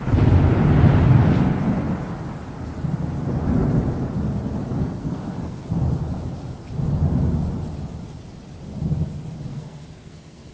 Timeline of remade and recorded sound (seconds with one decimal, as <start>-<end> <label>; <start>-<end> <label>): 0.0-4.8 recorded; 4.8-5.6 remade; 5.6-9.5 recorded; 9.5-10.5 remade